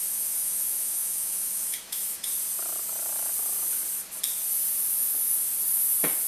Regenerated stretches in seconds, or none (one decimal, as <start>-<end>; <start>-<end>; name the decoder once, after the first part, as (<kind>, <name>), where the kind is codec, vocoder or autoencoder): 0.0-2.3 (autoencoder, DAC-VAE)